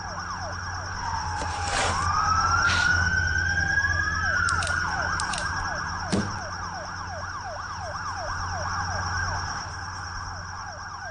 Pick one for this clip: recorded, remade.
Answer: recorded